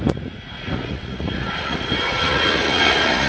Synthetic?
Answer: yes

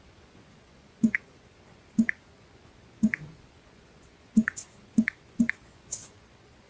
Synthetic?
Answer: yes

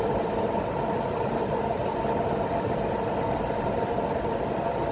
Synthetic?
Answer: no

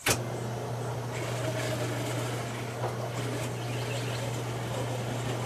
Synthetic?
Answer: no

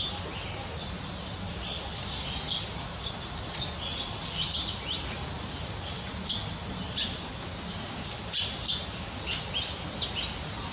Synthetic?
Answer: no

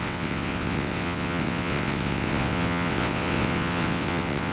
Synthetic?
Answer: yes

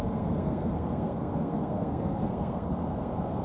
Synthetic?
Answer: yes